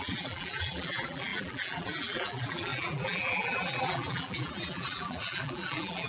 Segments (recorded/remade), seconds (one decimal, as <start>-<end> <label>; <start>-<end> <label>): 0.0-6.1 remade

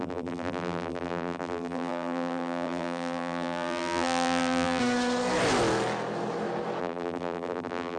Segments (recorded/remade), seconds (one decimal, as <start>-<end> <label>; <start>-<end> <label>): 0.0-4.8 remade; 4.8-6.8 recorded; 6.8-8.0 remade

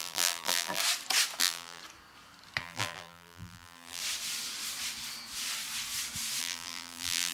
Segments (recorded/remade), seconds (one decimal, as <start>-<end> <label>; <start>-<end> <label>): 0.0-0.8 remade; 0.8-1.4 recorded; 1.4-1.8 remade; 1.8-2.6 recorded; 2.6-4.0 remade; 4.0-6.4 recorded; 6.4-7.3 remade